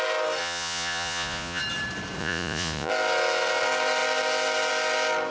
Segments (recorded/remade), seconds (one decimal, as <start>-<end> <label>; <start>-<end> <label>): 0.0-0.4 recorded; 0.4-1.6 remade; 1.6-2.2 recorded; 2.2-2.9 remade; 2.9-5.3 recorded